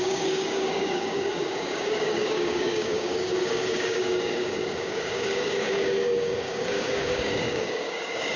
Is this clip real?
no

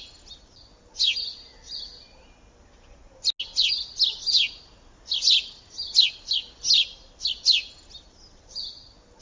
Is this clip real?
yes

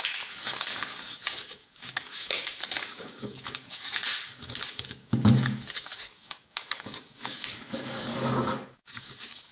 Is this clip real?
no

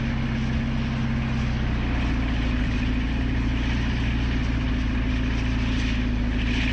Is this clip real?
yes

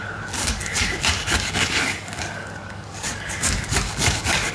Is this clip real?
no